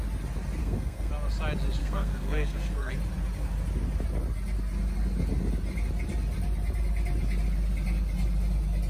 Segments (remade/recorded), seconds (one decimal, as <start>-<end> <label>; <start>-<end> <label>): 0.0-0.6 recorded; 0.6-1.1 remade; 1.1-1.8 recorded; 1.8-2.9 remade; 2.9-8.9 recorded

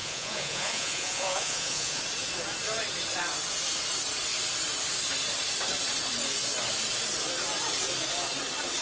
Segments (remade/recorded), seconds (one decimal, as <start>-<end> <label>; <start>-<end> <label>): 0.0-2.0 remade; 2.0-8.8 recorded

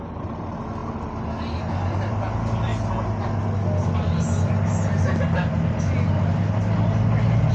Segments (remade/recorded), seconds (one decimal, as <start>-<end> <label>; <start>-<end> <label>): 0.0-7.5 recorded